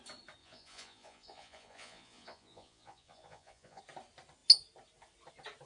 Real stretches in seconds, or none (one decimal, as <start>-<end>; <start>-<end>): 0.0-0.4; 3.8-5.7